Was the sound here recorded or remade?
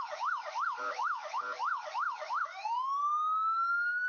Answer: remade